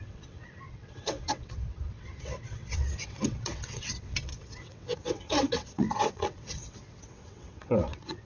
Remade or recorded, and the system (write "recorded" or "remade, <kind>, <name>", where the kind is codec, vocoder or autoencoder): remade, vocoder, WaveNeXt